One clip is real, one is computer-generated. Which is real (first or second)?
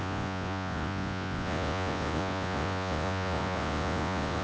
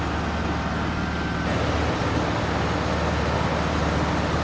second